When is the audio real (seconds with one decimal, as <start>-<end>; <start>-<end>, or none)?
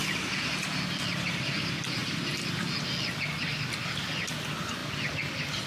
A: 0.0-5.7